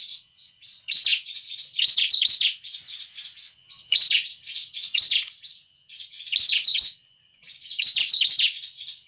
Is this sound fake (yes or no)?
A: yes